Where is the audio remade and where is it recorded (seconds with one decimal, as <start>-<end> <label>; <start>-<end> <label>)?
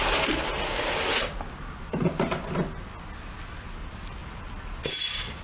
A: 0.0-5.4 recorded